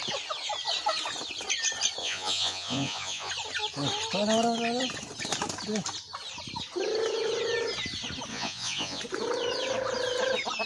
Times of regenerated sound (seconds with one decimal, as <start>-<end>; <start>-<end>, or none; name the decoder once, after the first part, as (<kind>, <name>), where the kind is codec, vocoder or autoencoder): 2.0-3.3 (vocoder, Vocos); 8.3-9.0